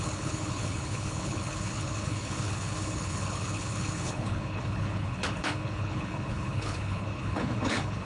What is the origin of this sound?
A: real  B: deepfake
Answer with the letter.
B